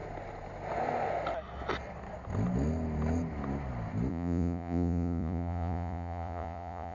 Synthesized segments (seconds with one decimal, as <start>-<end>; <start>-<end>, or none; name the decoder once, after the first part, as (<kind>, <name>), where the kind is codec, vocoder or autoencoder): 4.1-6.9 (vocoder, Vocos)